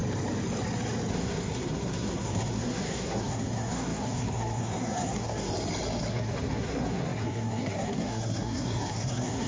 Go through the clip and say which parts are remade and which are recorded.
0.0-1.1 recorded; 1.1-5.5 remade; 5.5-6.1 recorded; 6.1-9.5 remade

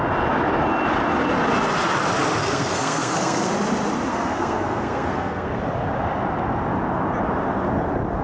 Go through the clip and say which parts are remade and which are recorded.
0.0-2.4 recorded; 2.4-3.5 remade; 3.5-4.1 recorded; 4.1-5.6 remade; 5.6-8.2 recorded